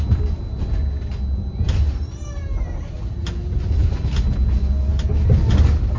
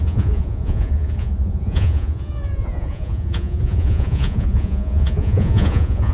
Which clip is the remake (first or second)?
second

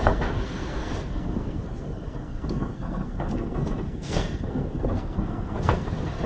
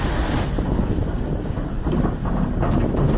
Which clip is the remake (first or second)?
first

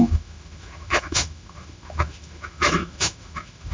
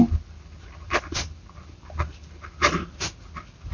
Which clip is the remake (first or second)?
first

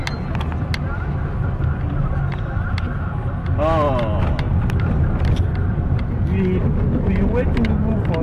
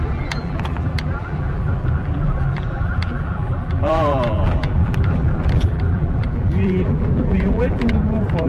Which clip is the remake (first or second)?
second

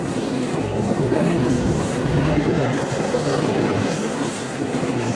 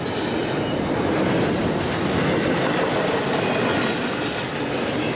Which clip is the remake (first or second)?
first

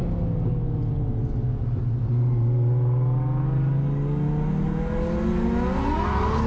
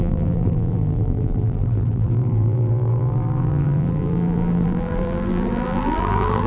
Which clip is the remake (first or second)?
second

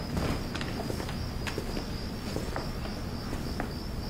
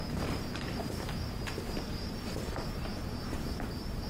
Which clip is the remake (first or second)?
second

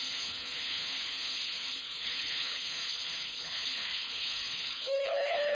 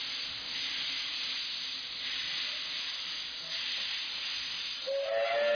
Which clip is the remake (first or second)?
first